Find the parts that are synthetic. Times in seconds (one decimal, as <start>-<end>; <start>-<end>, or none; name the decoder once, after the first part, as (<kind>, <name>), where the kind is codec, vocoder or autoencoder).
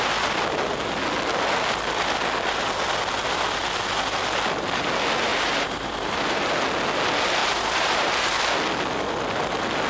5.3-6.5 (vocoder, BigVGAN v2); 7.4-8.4